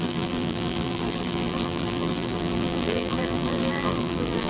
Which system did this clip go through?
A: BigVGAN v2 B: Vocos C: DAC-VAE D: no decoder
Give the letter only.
A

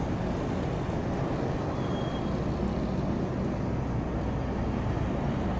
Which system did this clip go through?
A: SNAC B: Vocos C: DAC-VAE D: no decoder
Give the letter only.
D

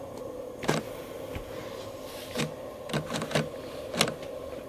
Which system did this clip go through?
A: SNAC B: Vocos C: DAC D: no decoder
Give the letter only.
D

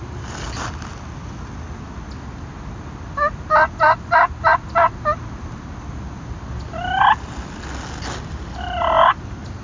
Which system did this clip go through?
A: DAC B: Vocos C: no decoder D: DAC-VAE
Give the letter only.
C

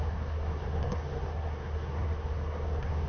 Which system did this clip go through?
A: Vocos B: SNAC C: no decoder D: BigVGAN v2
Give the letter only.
B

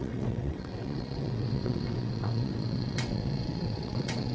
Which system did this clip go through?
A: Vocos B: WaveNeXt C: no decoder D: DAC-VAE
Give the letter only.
B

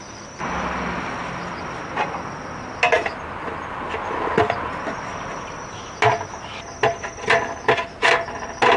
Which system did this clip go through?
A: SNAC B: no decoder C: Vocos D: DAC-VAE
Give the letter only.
B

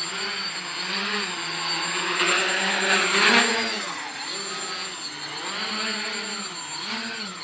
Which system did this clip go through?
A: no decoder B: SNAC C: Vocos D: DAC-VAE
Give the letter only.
A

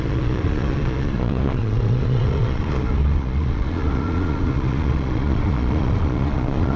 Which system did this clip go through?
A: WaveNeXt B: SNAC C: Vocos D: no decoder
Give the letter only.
C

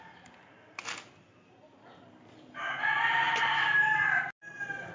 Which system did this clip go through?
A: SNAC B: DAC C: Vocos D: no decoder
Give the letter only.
D